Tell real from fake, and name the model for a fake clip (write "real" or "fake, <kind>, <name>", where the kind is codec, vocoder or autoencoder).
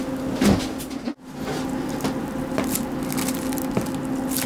real